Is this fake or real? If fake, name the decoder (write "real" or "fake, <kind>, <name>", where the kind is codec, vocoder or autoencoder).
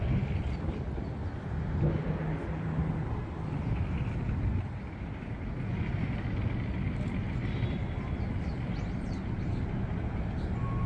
real